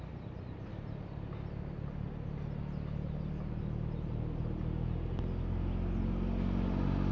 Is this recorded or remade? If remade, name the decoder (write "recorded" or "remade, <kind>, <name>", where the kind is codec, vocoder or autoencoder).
recorded